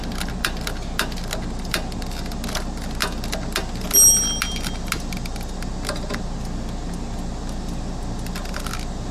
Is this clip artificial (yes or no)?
no